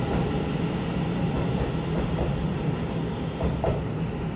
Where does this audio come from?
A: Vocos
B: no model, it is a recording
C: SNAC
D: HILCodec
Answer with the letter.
B